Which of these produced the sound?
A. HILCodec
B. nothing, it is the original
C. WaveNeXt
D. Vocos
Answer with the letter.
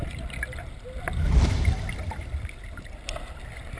B